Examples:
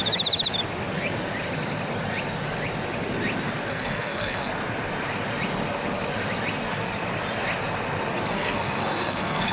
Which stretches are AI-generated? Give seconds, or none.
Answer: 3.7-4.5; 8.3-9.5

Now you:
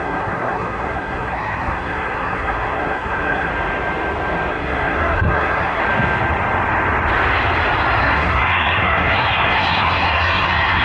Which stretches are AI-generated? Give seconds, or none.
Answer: 0.0-3.5; 4.5-5.8; 8.0-10.8

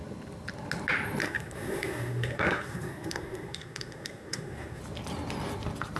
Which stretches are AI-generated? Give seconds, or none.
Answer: 1.2-4.8

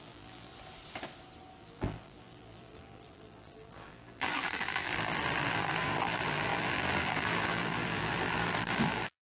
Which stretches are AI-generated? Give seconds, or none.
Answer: 0.0-0.5; 1.6-9.3

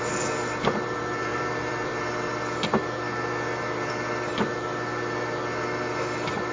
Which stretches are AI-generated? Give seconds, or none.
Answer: 1.3-1.9

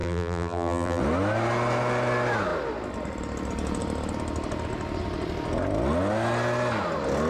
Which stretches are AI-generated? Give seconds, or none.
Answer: 0.0-1.0